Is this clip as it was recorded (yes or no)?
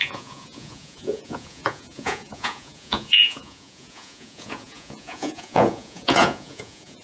no